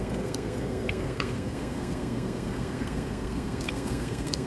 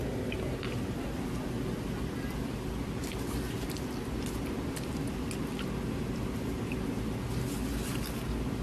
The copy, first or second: first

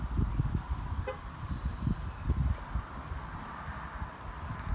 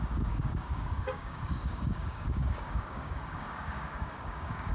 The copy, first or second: second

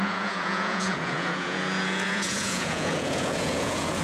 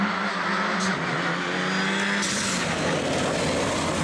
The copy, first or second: first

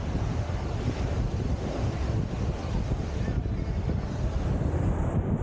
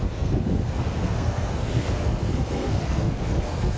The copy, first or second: second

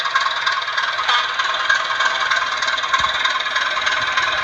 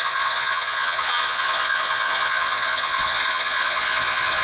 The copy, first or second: second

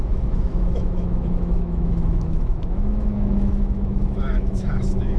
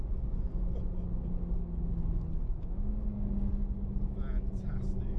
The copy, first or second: first